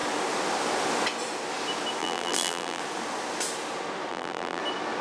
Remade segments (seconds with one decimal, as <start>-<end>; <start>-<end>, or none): 2.0-2.8; 4.1-4.6